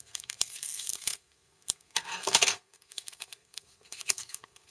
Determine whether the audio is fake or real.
fake